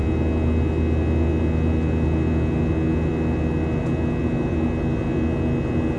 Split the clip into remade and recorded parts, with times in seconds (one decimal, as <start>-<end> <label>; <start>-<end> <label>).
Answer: 0.0-6.0 recorded